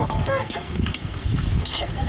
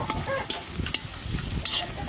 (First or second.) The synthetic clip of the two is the first